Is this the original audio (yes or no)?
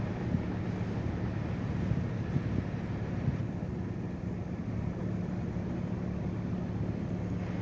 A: yes